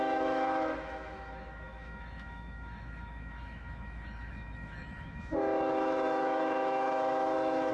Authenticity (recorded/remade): remade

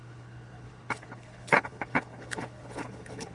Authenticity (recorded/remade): remade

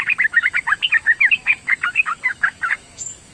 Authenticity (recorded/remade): remade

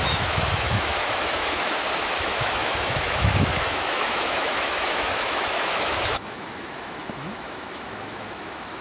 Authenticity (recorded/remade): remade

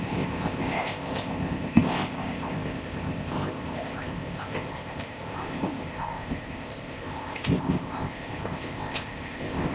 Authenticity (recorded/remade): remade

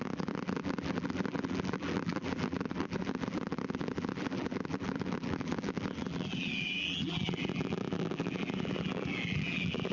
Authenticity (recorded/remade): remade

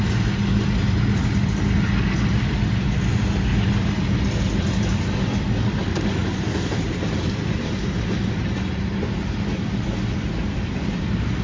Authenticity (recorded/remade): recorded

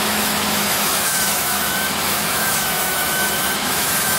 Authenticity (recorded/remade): remade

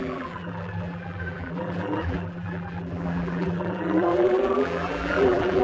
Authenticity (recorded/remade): remade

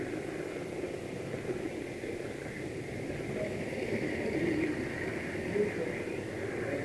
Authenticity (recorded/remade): recorded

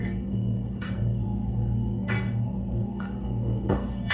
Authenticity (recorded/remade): remade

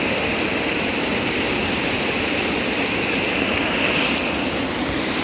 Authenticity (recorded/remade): recorded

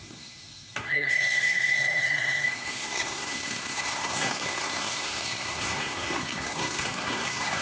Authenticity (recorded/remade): remade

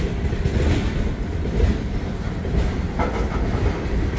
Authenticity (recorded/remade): recorded